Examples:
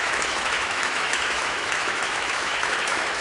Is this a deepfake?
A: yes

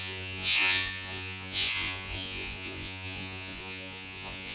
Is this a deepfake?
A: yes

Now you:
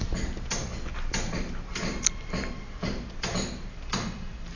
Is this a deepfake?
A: no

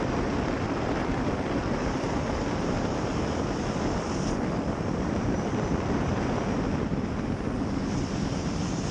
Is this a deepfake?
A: yes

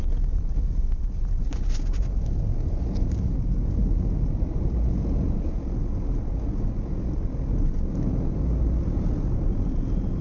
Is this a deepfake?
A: no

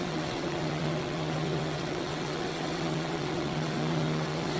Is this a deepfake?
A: yes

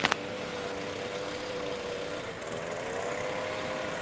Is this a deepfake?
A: no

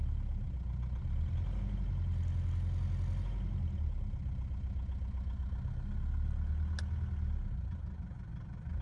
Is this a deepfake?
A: no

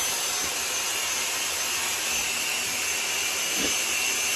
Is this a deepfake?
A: no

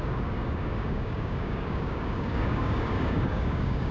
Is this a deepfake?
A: yes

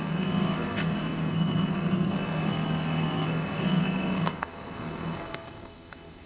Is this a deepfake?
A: yes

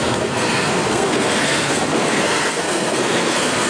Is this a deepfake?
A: yes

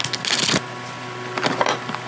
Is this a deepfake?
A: no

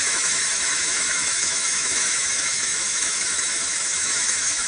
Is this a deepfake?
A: yes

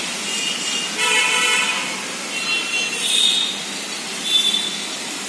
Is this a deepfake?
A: no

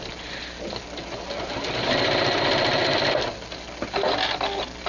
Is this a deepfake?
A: no